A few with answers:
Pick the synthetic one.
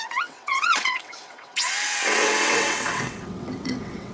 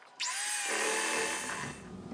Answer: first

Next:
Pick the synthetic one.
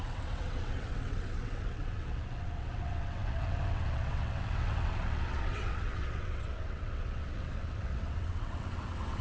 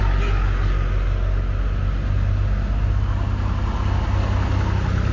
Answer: first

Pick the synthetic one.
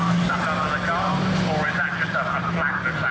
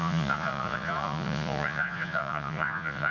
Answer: second